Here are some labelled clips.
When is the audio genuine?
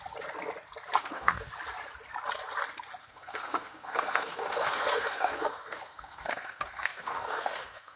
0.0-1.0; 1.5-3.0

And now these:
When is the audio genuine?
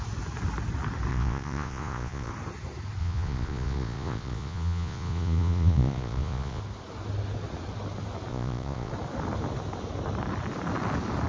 0.0-1.1; 2.3-3.0; 6.6-8.3; 8.9-11.3